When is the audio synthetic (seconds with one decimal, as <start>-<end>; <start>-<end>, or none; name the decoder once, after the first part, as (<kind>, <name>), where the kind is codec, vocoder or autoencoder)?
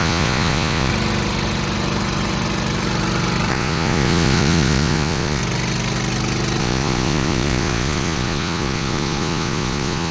0.0-0.9 (vocoder, Vocos); 3.5-5.4; 6.6-10.1